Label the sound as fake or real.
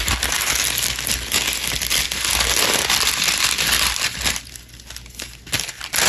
real